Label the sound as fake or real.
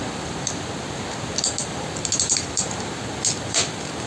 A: real